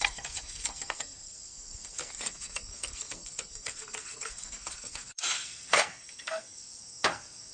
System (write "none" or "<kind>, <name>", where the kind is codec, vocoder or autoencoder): codec, SNAC